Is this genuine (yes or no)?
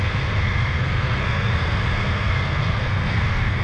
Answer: no